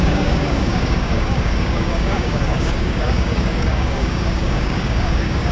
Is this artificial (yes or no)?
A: yes